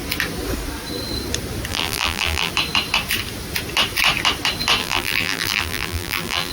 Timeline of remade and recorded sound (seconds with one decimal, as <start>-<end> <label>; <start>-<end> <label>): 0.0-1.7 recorded; 1.7-2.5 remade; 2.5-4.8 recorded; 4.8-6.5 remade